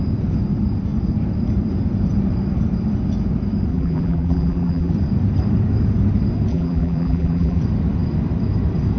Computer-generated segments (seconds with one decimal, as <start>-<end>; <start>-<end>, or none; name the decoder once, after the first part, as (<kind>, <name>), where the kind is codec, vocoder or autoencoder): 3.7-4.9 (vocoder, BigVGAN v2); 6.5-7.6